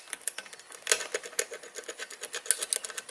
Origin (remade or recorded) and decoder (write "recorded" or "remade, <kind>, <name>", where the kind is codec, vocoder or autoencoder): recorded